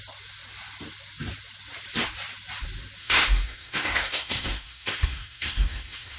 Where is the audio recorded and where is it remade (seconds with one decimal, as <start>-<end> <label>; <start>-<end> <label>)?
0.0-3.0 recorded; 3.0-6.2 remade